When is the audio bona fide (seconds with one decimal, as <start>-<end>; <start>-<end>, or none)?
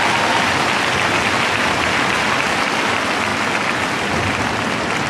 0.0-5.1